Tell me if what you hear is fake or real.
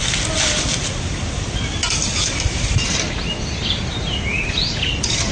real